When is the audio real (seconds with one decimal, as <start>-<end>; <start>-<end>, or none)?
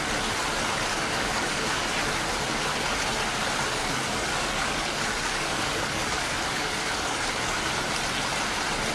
0.0-0.9; 1.9-3.8; 7.6-8.9